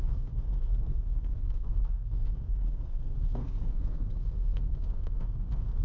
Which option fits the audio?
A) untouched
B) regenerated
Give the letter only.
B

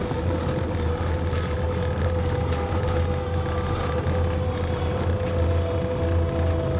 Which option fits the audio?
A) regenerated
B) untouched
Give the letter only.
B